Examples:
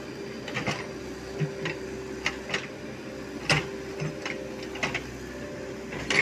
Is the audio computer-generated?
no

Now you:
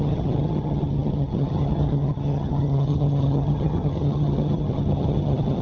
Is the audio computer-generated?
yes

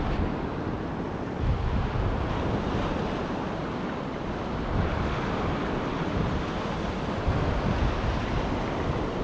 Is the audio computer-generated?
no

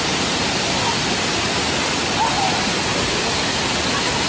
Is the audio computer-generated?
no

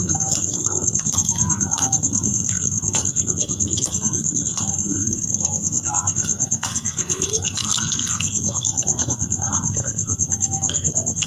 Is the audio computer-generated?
yes